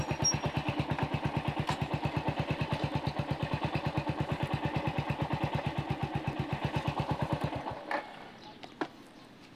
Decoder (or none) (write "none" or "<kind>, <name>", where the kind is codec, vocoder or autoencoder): none